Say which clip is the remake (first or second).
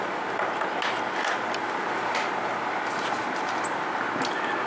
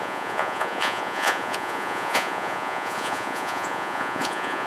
second